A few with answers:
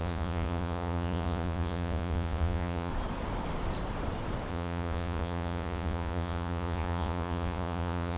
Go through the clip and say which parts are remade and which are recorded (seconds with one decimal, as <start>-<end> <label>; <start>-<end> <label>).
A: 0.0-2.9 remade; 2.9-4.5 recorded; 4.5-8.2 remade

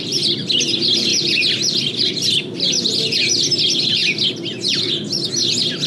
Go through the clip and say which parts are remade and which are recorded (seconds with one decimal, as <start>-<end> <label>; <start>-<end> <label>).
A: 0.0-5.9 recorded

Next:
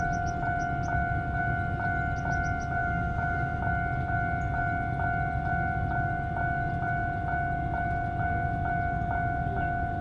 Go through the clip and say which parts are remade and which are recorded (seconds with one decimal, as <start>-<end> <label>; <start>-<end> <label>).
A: 0.0-2.8 recorded; 2.8-3.6 remade; 3.6-10.0 recorded

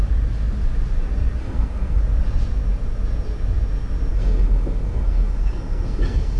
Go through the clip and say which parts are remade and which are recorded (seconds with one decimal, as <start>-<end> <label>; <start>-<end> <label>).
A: 0.0-1.4 recorded; 1.4-2.0 remade; 2.0-4.1 recorded; 4.1-6.4 remade